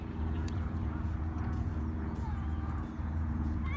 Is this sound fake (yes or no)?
yes